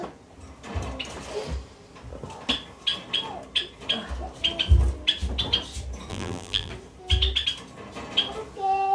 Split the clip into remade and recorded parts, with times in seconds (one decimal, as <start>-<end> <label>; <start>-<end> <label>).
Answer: 0.0-6.1 recorded; 6.1-6.7 remade; 6.7-8.9 recorded

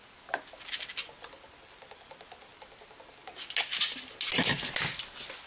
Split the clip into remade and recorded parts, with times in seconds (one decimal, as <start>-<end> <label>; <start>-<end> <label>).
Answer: 0.0-5.5 recorded

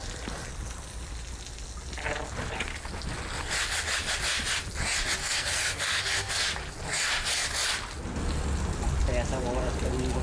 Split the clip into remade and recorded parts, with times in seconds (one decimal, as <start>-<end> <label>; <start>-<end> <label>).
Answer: 0.0-5.2 recorded; 5.2-6.4 remade; 6.4-10.2 recorded

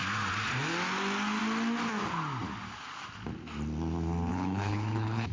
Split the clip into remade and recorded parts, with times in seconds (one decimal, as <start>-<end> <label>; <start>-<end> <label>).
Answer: 0.0-4.3 recorded; 4.3-5.3 remade

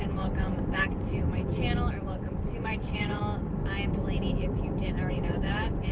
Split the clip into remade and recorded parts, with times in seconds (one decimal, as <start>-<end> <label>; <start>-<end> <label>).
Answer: 0.0-1.5 remade; 1.5-2.0 recorded; 2.0-3.2 remade; 3.2-5.1 recorded; 5.1-5.9 remade

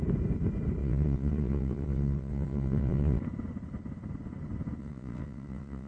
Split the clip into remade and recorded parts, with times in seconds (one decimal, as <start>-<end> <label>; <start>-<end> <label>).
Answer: 0.0-0.8 recorded; 0.8-3.2 remade; 3.2-4.8 recorded; 4.8-5.9 remade

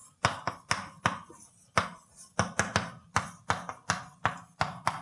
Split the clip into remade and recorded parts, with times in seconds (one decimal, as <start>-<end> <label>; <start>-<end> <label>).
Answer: 0.0-5.0 recorded